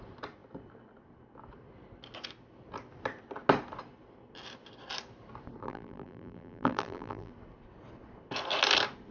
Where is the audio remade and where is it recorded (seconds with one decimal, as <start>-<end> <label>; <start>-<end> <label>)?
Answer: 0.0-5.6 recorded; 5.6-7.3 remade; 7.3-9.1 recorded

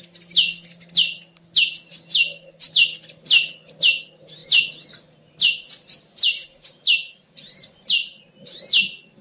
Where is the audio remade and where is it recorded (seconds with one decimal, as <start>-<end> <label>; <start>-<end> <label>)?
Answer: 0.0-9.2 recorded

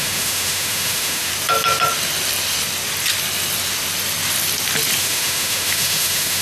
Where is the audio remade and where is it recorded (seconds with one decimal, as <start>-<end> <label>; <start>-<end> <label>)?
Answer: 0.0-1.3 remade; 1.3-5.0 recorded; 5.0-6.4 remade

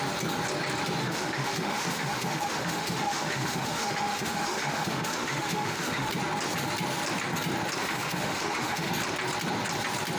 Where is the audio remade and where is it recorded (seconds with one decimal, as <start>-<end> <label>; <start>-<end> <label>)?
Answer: 0.0-1.0 recorded; 1.0-6.1 remade; 6.1-7.8 recorded; 7.8-8.9 remade; 8.9-10.2 recorded

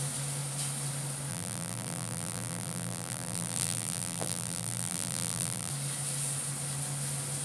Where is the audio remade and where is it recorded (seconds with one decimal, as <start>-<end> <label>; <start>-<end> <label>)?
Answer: 0.0-1.3 recorded; 1.3-5.7 remade; 5.7-7.4 recorded

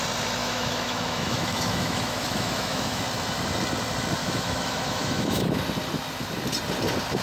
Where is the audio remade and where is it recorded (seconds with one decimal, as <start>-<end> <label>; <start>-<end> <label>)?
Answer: 0.0-0.4 recorded; 0.4-3.0 remade; 3.0-4.2 recorded; 4.2-5.6 remade; 5.6-7.2 recorded

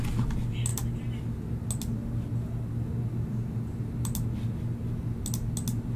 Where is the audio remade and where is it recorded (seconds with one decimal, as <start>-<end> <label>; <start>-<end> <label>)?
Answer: 0.0-6.0 recorded